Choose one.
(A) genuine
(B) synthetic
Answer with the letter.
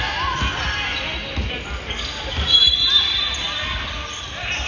A